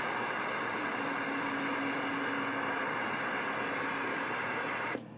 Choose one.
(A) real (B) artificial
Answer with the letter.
A